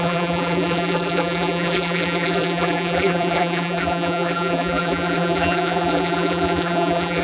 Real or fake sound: fake